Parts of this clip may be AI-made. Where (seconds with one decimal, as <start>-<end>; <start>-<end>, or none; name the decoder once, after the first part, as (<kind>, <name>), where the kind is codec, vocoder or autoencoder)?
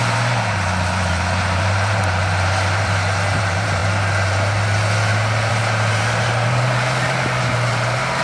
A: 0.0-3.8 (vocoder, BigVGAN v2); 5.5-8.2